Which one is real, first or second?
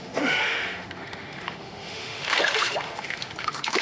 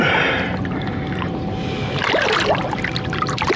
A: second